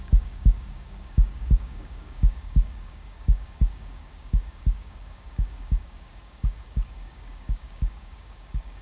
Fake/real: fake